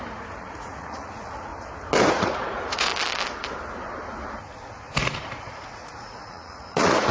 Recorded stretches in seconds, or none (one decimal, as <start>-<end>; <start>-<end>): 1.5-2.1; 2.9-5.4